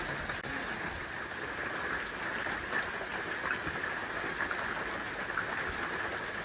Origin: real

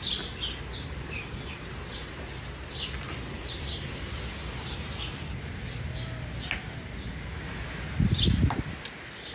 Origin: real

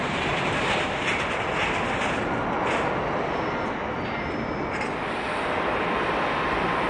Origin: real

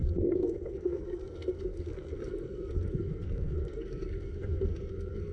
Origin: fake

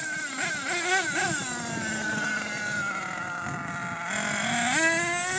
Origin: real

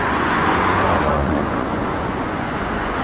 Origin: fake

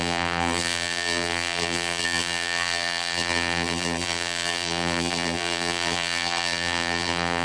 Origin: fake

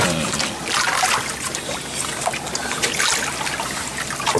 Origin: real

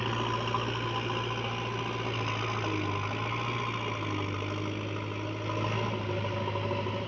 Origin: real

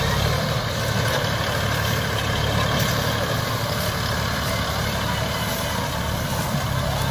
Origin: real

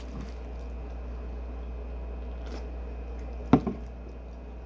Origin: real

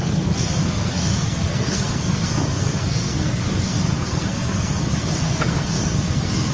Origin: fake